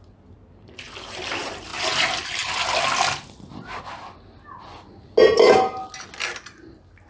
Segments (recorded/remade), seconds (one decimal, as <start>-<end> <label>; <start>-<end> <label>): 0.0-7.1 recorded